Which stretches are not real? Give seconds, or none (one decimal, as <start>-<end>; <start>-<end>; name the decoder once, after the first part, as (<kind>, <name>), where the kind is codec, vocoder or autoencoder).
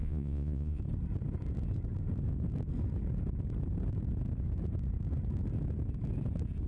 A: 0.0-0.8 (vocoder, Vocos)